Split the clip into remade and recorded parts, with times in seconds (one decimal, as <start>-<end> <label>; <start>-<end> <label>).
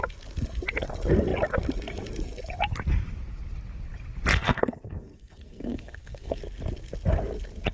0.0-4.3 recorded; 4.3-6.4 remade; 6.4-7.7 recorded